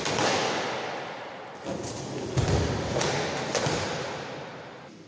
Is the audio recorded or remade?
recorded